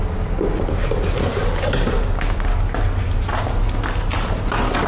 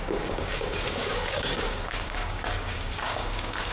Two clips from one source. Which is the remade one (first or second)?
second